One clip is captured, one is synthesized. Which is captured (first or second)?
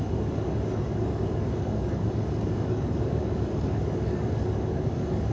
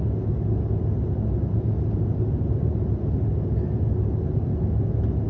second